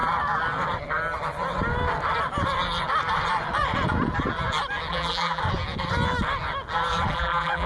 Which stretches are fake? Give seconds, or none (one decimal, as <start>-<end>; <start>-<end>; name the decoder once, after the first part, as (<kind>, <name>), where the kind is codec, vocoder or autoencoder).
4.9-5.4 (vocoder, BigVGAN v2); 7.1-7.7